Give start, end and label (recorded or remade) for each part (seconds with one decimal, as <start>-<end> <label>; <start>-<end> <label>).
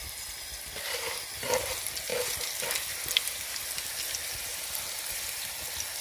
0.0-6.0 recorded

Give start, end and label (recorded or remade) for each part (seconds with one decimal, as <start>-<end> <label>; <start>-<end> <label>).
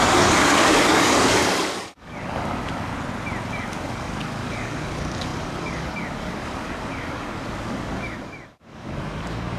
0.0-2.9 remade; 2.9-3.5 recorded; 3.5-9.6 remade